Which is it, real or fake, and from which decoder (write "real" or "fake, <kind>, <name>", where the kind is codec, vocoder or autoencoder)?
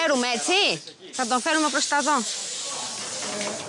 real